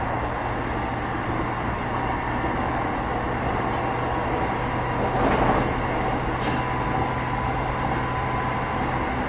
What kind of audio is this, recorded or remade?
recorded